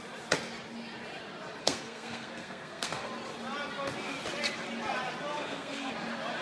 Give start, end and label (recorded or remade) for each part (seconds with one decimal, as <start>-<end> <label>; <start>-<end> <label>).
0.0-1.6 recorded; 1.6-3.1 remade; 3.1-5.3 recorded; 5.3-5.9 remade; 5.9-6.4 recorded